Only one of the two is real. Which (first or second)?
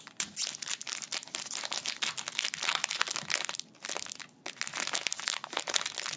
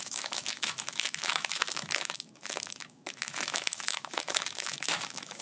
first